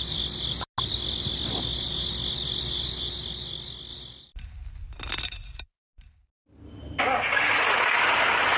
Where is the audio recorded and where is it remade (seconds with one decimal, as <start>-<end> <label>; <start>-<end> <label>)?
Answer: 0.0-8.6 recorded